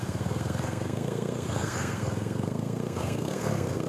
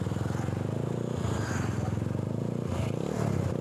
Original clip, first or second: second